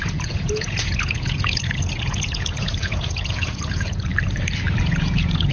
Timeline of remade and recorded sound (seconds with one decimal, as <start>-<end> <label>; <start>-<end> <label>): 0.0-4.1 remade; 4.1-4.8 recorded; 4.8-5.5 remade